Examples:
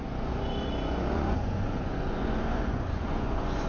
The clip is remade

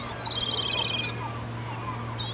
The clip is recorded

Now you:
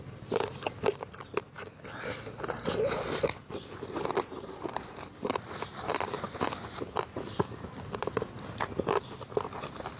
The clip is remade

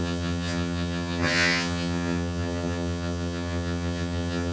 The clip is remade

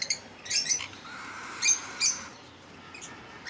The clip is remade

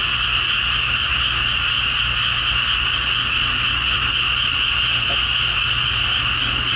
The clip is recorded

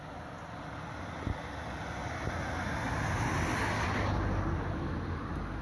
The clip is recorded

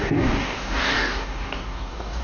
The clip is remade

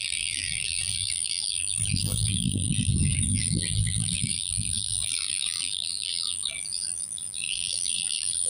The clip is remade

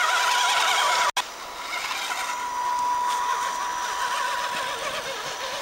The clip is recorded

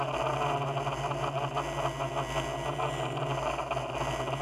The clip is recorded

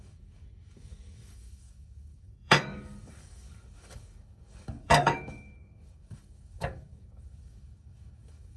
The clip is remade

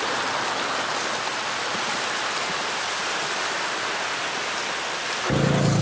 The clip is recorded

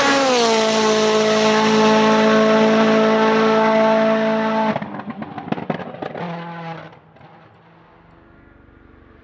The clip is recorded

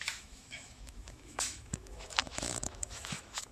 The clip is remade